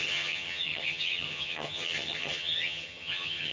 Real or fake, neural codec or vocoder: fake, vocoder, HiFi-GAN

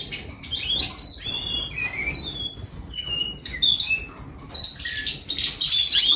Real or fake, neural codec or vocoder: real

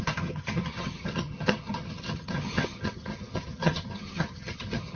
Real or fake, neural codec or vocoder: fake, vocoder, HiFi-GAN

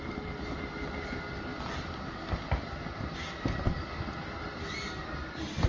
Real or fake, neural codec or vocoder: real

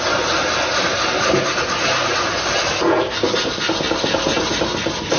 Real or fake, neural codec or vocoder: real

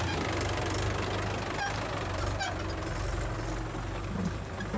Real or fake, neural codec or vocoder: real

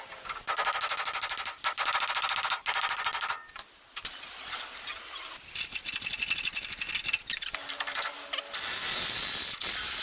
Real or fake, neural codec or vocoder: real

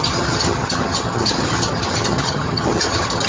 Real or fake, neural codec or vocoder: fake, vocoder, HiFi-GAN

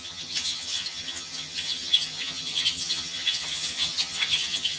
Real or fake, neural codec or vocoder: fake, vocoder, HiFi-GAN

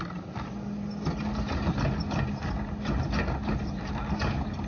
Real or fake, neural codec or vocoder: real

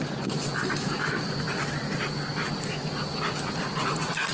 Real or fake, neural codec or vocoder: real